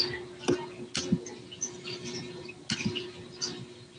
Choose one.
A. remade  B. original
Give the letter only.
B